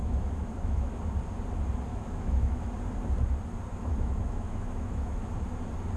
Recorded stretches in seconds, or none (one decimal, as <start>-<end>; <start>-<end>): 1.0-1.9; 2.7-3.8; 5.3-6.0